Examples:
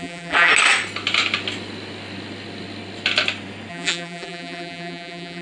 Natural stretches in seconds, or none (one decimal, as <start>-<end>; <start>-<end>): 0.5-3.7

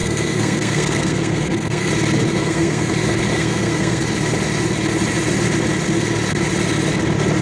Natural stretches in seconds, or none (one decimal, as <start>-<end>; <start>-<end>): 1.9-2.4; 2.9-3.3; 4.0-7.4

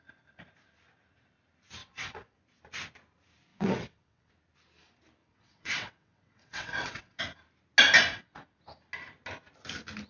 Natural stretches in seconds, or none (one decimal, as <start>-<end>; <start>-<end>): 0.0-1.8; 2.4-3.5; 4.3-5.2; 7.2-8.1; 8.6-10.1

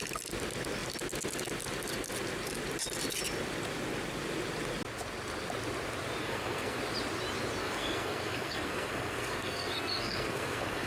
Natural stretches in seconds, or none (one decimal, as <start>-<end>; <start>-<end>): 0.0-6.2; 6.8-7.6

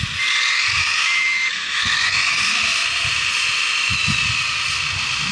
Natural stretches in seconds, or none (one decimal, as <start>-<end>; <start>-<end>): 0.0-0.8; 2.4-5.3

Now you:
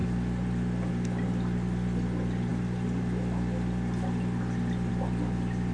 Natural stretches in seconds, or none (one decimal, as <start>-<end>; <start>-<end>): 0.9-5.7